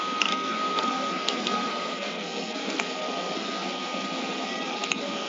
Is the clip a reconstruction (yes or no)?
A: yes